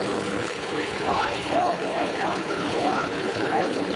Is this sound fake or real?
fake